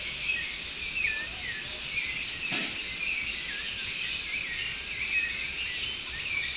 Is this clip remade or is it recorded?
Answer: recorded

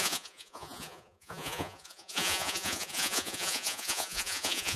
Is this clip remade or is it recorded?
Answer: remade